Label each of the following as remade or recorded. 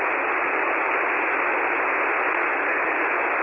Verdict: recorded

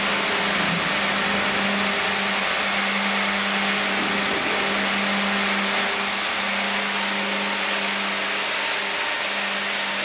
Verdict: recorded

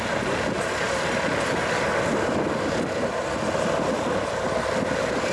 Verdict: recorded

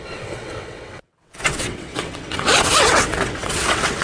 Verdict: remade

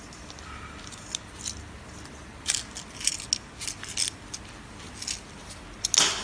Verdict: recorded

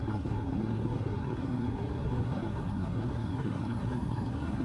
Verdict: remade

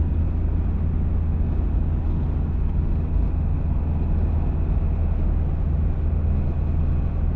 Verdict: recorded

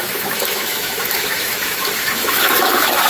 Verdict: remade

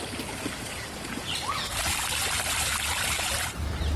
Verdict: recorded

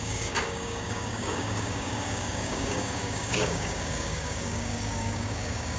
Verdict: remade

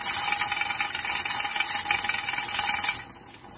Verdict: recorded